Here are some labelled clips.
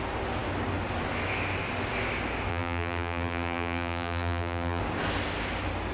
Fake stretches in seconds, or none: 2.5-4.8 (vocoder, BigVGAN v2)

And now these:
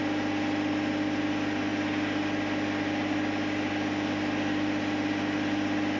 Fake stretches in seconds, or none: none

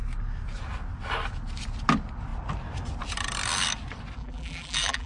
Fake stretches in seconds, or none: 4.2-5.1 (vocoder, BigVGAN v2)